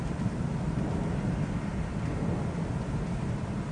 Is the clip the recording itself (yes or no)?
yes